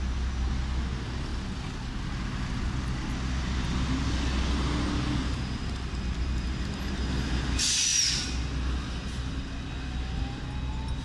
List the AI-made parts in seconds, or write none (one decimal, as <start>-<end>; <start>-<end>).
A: none